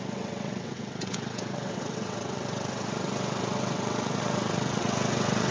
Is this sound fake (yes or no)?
yes